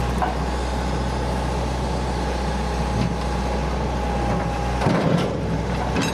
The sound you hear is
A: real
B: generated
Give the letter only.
A